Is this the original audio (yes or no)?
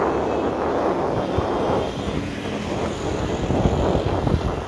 yes